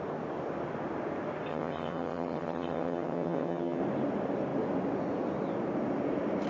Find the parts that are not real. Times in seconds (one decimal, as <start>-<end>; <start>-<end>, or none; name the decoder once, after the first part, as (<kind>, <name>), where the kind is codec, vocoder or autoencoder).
1.5-3.8 (vocoder, HiFi-GAN)